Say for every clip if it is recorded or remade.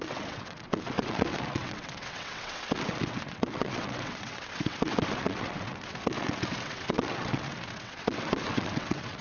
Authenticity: remade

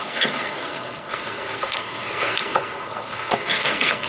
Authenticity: remade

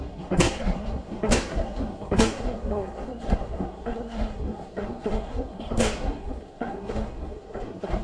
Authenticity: remade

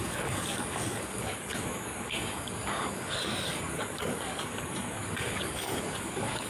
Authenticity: remade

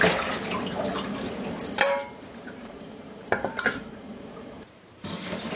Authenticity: remade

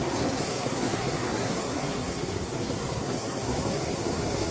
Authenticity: remade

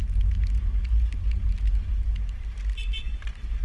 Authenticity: recorded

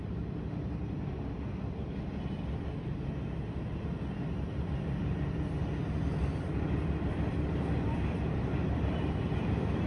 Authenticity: recorded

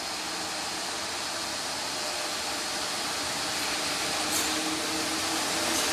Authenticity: recorded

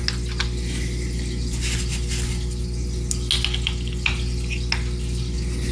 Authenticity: recorded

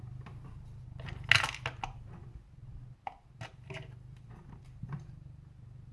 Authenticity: recorded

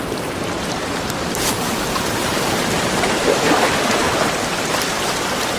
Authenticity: remade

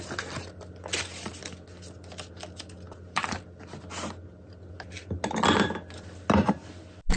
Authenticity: recorded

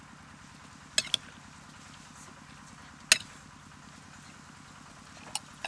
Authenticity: recorded